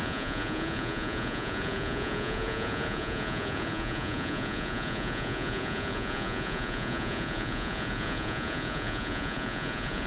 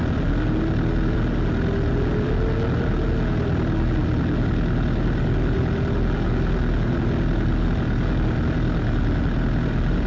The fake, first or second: first